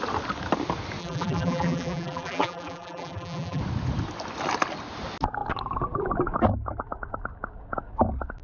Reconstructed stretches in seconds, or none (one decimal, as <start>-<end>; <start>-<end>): 1.0-3.6